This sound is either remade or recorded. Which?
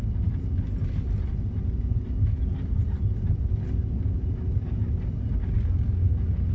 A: recorded